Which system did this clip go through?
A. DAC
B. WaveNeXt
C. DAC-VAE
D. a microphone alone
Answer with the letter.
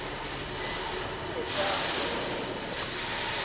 D